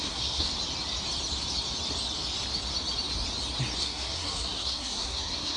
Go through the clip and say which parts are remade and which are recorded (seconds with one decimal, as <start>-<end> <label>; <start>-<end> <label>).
0.0-0.5 remade; 0.5-3.8 recorded; 3.8-5.6 remade